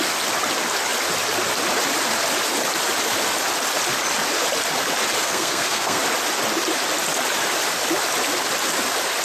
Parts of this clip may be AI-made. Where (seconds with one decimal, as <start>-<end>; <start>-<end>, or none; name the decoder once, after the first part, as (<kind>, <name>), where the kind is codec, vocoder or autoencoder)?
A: 5.2-6.0 (codec, SNAC)